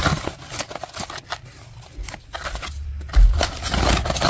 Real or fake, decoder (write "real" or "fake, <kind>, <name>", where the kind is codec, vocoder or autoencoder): real